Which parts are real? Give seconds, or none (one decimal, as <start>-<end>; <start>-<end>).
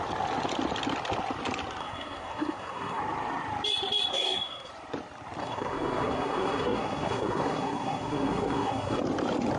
0.0-1.8; 3.0-4.1; 4.7-5.4; 9.0-9.6